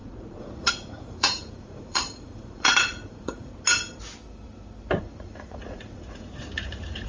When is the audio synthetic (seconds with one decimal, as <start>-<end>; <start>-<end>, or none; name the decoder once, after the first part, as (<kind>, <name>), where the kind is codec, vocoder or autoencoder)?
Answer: 0.0-3.5 (vocoder, Vocos); 5.0-7.1